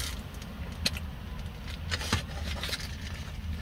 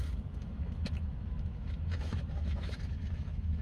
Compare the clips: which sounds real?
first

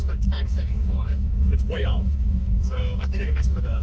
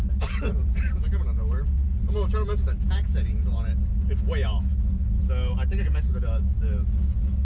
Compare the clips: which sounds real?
second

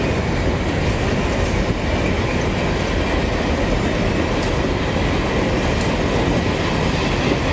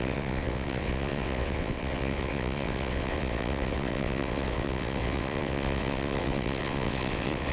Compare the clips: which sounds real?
first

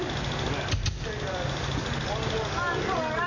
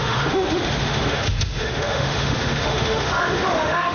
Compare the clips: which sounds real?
first